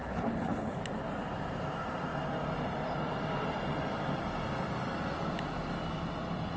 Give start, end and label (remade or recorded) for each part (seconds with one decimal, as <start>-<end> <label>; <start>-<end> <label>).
0.0-0.8 remade; 0.8-6.6 recorded